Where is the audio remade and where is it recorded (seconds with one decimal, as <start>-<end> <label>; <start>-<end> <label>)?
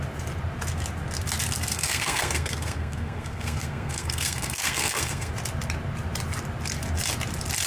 0.0-1.7 recorded; 1.7-5.3 remade; 5.3-7.7 recorded